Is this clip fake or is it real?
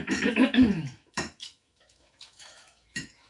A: fake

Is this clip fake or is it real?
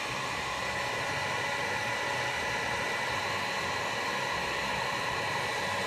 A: fake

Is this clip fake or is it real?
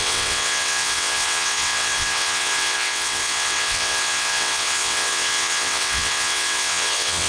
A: fake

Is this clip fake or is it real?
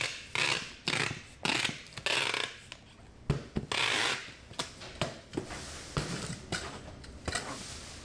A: real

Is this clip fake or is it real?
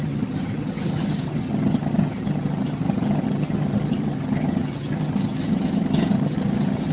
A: fake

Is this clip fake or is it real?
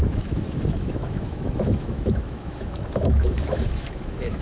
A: fake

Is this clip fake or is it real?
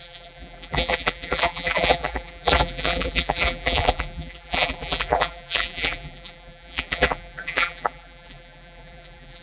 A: fake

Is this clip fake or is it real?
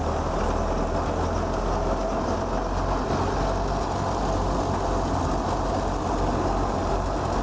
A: real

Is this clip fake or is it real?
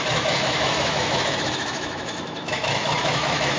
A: fake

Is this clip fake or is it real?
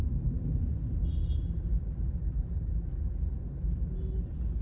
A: real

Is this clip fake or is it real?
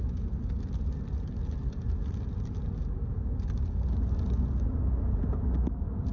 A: real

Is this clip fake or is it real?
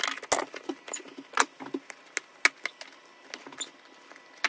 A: real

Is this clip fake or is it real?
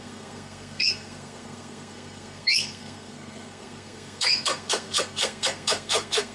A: fake